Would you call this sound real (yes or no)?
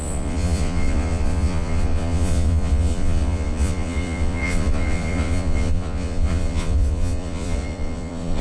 no